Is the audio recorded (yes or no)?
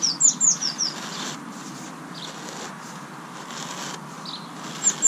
yes